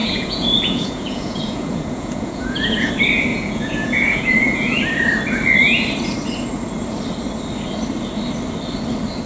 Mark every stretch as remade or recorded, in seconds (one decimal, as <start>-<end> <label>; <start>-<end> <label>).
0.0-2.9 remade; 2.9-3.3 recorded; 3.3-4.8 remade; 4.8-9.3 recorded